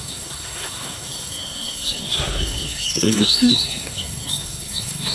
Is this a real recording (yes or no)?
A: no